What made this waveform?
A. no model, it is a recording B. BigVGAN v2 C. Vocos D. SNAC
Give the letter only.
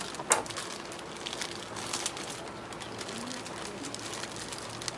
A